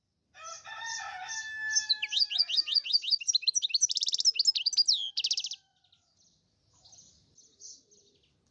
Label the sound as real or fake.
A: real